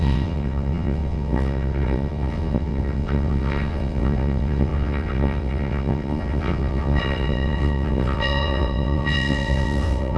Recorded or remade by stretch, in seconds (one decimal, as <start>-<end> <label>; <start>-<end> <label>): 0.0-10.2 remade

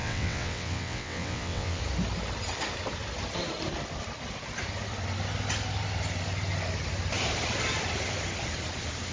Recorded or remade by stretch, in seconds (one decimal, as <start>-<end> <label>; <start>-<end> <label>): 0.0-1.8 remade; 1.8-9.1 recorded

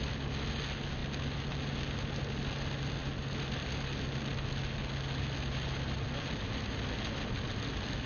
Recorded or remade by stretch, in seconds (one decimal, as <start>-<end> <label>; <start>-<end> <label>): 0.0-8.1 recorded

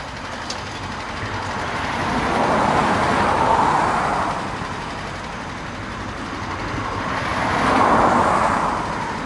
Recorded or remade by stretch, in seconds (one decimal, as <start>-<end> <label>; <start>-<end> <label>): 0.0-7.3 recorded; 7.3-8.9 remade; 8.9-9.3 recorded

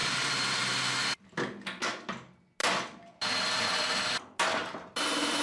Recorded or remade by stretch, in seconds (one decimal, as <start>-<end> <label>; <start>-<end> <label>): 0.0-5.4 recorded